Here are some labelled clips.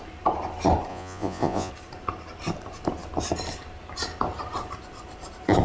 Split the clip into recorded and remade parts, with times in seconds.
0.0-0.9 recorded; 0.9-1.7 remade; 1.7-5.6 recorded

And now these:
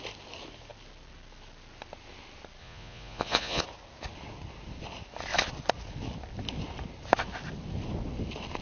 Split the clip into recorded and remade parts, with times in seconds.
0.0-2.6 recorded; 2.6-3.6 remade; 3.6-8.6 recorded

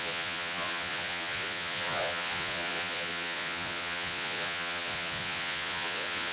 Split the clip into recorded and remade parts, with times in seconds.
0.0-6.3 remade

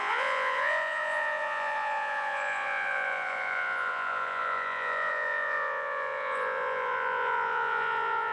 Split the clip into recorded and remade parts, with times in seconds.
0.0-8.3 remade

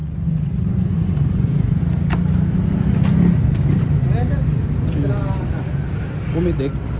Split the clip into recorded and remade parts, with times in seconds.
0.0-1.8 remade; 1.8-7.0 recorded

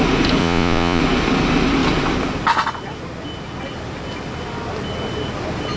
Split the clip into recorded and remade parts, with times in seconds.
0.0-0.4 recorded; 0.4-1.0 remade; 1.0-5.8 recorded

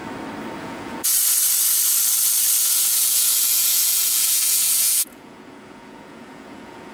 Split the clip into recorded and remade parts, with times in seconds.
0.0-0.6 recorded; 0.6-1.1 remade; 1.1-2.6 recorded; 2.6-6.9 remade